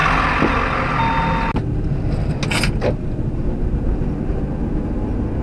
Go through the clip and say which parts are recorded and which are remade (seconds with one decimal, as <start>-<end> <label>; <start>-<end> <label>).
0.0-5.4 recorded